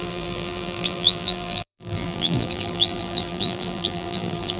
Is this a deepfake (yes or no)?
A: yes